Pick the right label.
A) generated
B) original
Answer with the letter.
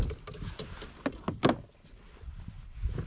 B